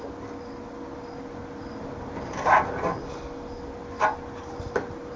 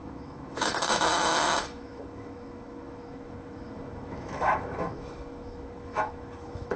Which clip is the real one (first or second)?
first